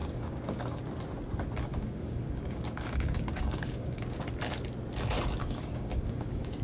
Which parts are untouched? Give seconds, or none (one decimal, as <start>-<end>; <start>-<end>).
0.8-1.7; 4.2-5.4